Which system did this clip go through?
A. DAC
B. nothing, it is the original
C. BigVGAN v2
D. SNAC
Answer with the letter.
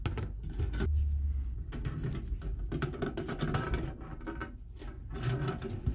B